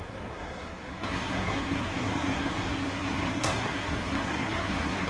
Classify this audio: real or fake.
fake